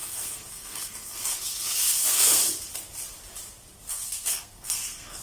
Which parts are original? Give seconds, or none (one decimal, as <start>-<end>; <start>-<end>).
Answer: 2.4-3.9